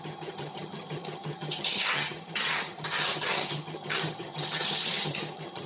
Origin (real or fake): fake